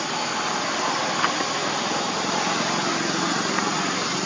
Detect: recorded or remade recorded